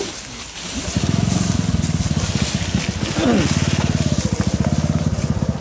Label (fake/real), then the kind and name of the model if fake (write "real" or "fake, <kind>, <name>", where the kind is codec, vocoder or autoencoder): real